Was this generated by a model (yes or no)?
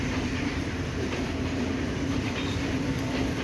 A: yes